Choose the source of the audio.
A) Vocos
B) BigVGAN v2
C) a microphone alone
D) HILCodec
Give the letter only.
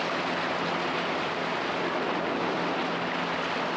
C